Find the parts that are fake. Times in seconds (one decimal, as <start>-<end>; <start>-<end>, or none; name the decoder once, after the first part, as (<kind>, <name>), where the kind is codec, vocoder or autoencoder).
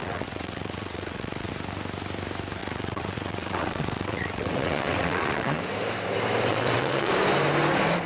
0.0-1.5 (vocoder, WaveNeXt); 2.6-5.6; 6.5-7.1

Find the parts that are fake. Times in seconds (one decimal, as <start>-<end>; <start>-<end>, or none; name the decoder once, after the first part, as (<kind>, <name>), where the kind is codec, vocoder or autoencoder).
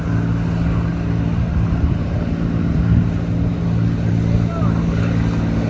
none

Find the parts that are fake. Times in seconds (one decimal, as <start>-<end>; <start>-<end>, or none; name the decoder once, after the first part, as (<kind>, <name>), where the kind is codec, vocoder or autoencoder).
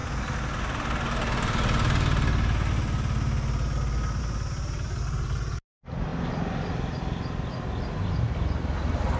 none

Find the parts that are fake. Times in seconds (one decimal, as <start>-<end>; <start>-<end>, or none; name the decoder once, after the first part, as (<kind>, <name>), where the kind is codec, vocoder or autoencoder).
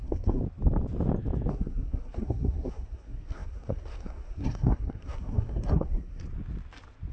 0.0-0.4 (codec, SNAC); 1.5-6.2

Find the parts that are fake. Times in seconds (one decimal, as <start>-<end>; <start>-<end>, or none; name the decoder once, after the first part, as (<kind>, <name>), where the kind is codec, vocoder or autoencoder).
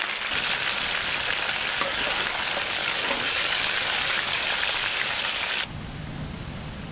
1.7-2.4 (codec, DAC); 2.8-5.2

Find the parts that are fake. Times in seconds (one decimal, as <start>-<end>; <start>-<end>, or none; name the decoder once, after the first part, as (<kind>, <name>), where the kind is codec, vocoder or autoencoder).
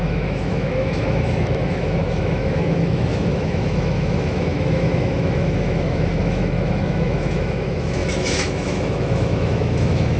0.0-10.2 (autoencoder, DAC-VAE)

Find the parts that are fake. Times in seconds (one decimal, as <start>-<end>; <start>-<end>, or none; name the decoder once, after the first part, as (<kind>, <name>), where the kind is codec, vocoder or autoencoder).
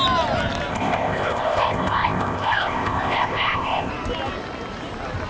0.7-3.9 (codec, ZipCodec)